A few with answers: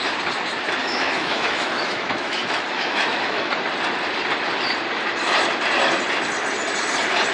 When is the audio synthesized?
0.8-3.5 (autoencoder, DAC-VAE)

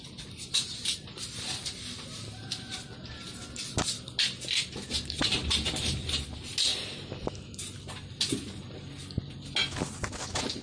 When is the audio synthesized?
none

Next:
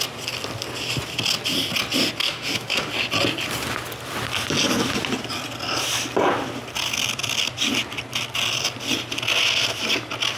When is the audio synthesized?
2.2-2.9 (autoencoder, DAC-VAE)

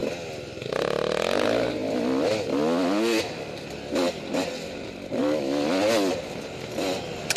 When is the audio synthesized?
none

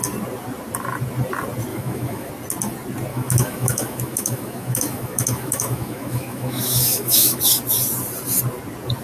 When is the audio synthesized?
1.7-2.3 (autoencoder, DAC-VAE); 3.1-7.4

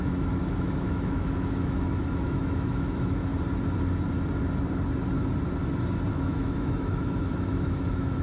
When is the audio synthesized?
0.0-3.3 (autoencoder, DAC-VAE); 6.1-8.2